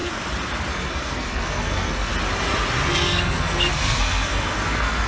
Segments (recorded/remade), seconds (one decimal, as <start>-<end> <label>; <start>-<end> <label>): 0.0-0.7 recorded; 0.7-2.1 remade; 2.1-2.9 recorded; 2.9-5.1 remade